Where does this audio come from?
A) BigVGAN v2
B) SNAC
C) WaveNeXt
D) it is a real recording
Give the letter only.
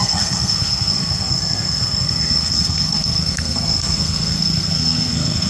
B